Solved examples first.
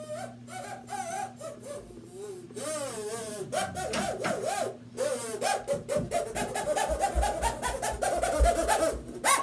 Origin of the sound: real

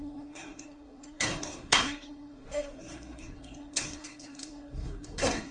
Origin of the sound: fake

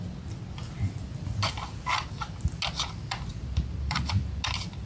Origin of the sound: real